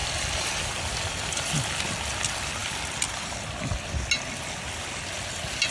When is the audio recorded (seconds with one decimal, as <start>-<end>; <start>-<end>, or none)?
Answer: 0.5-2.6; 3.9-5.7